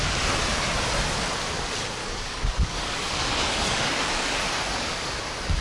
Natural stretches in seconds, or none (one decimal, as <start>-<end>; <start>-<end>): 0.0-2.0